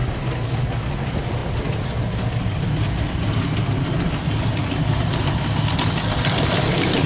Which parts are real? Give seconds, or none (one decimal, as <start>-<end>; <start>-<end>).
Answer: 0.0-7.1